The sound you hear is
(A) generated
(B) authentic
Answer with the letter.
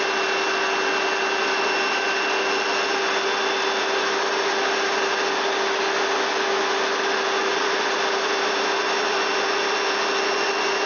B